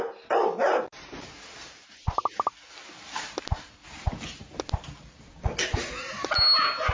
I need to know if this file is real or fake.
real